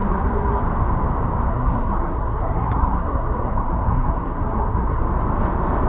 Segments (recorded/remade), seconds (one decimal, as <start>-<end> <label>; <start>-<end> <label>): 0.0-0.6 remade; 0.6-1.5 recorded; 1.5-5.0 remade; 5.0-5.9 recorded

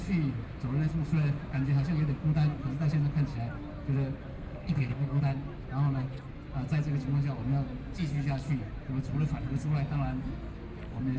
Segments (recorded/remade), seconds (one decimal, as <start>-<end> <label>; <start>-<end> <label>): 0.0-4.3 recorded; 4.3-5.2 remade; 5.2-11.2 recorded

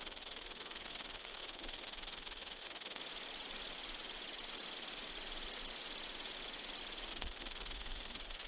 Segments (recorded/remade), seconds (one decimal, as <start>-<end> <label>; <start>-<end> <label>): 0.0-3.0 remade; 3.0-7.1 recorded; 7.1-8.5 remade